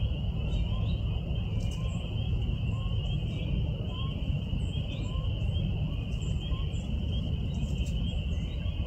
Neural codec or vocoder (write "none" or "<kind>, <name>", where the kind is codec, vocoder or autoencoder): none